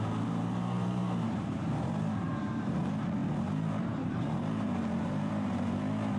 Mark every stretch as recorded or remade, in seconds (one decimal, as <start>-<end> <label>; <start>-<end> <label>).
0.0-6.2 remade